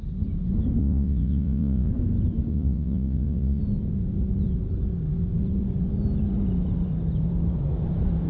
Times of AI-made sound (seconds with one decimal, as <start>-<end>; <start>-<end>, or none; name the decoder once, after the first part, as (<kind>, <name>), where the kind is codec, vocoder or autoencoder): 0.8-1.9 (vocoder, Vocos); 2.5-3.6

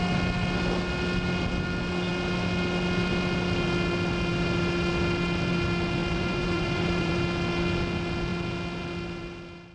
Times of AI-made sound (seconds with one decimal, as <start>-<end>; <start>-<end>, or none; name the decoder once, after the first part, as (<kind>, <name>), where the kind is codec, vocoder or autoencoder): 6.0-7.1 (vocoder, Vocos)

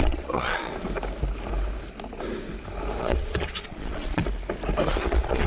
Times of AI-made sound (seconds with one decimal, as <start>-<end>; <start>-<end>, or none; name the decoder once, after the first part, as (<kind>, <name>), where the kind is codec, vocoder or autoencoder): 0.0-0.7 (vocoder, Vocos); 3.0-4.2; 4.9-5.5

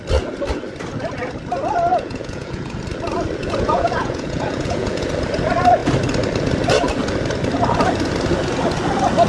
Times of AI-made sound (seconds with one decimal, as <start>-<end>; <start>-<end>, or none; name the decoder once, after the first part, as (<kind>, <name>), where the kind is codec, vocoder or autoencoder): 1.9-2.8 (vocoder, Vocos); 3.4-5.1

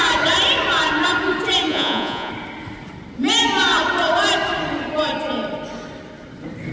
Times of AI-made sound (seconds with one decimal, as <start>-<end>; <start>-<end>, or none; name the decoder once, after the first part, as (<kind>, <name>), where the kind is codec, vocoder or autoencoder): 1.7-2.3 (vocoder, Vocos)

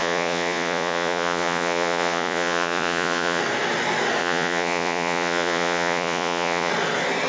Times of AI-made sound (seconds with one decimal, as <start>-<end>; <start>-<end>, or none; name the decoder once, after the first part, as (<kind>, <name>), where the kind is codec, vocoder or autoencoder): 0.0-3.4 (vocoder, Vocos); 4.2-6.7

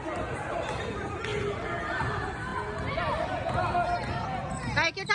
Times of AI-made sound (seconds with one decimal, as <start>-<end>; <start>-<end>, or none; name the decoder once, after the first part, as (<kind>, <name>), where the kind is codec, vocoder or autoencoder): none

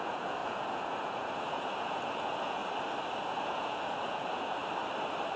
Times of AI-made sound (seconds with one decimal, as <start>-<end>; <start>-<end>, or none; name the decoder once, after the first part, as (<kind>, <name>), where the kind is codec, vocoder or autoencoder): 0.0-2.6 (vocoder, Vocos); 3.2-4.6